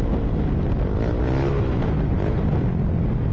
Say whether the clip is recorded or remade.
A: recorded